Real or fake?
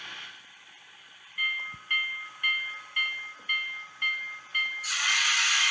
real